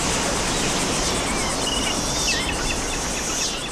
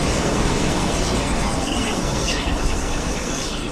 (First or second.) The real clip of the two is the first